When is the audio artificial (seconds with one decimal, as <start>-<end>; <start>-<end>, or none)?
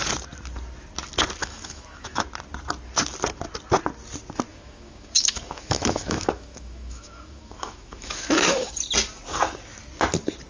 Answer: 1.4-2.2; 4.5-8.7